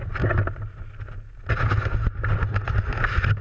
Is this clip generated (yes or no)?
no